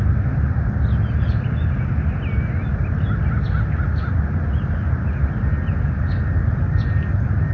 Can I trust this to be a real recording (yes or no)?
yes